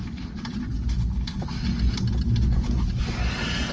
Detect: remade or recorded recorded